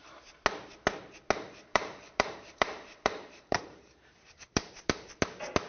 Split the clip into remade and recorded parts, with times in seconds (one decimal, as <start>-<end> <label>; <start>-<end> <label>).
0.0-1.7 recorded; 1.7-5.1 remade; 5.1-5.7 recorded